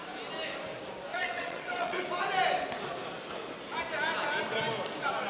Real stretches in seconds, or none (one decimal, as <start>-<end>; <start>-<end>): 0.0-1.1; 2.0-5.3